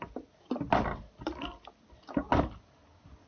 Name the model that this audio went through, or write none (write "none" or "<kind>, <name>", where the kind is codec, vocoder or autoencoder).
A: none